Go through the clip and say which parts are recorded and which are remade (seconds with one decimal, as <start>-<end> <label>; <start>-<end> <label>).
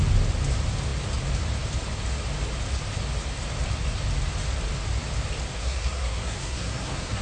0.0-5.6 recorded; 5.6-7.2 remade